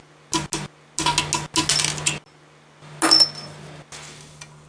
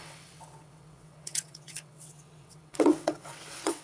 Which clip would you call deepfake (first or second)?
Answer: second